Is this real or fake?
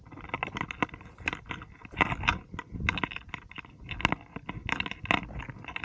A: real